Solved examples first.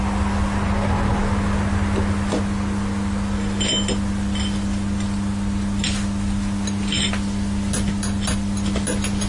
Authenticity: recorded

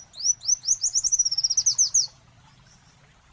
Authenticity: recorded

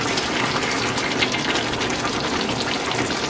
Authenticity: recorded